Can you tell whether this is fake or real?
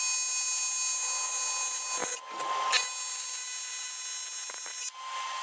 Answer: real